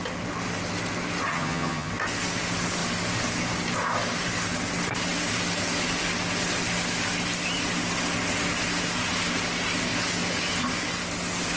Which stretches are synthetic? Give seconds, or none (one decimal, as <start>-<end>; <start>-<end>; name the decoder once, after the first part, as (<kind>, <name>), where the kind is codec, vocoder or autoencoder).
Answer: 1.3-1.9 (vocoder, HiFi-GAN)